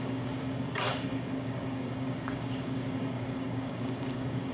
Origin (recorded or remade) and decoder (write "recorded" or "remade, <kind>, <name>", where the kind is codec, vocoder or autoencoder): remade, codec, DAC